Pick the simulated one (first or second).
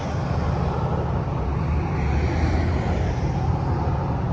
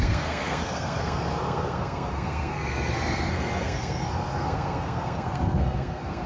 second